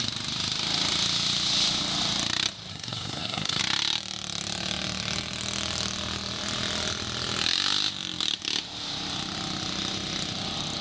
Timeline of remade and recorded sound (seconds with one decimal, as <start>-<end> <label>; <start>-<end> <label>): 0.0-2.7 recorded; 2.7-3.6 remade; 3.6-10.8 recorded